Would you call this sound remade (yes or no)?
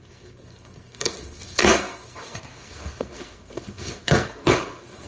yes